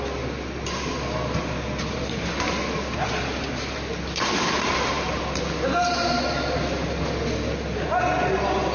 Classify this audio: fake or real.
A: real